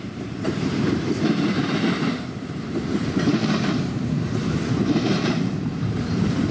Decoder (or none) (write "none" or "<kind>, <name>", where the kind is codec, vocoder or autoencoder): vocoder, BigVGAN v2